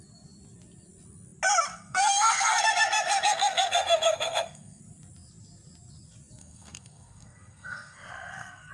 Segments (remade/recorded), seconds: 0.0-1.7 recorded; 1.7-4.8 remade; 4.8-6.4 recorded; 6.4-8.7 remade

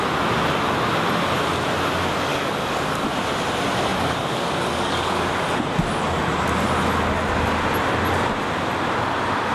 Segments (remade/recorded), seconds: 0.0-2.3 recorded; 2.3-3.1 remade; 3.1-3.9 recorded; 3.9-5.4 remade; 5.4-9.5 recorded